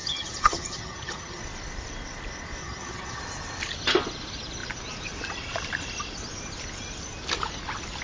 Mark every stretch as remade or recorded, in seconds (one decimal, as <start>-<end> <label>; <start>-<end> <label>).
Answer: 0.0-1.4 remade; 1.4-2.6 recorded; 2.6-3.2 remade; 3.2-8.0 recorded